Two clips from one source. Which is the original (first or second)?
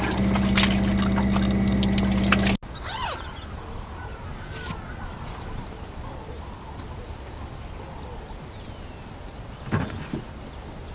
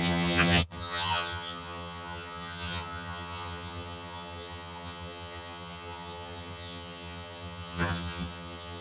first